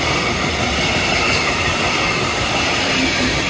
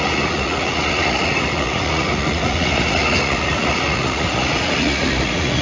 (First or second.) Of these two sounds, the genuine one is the first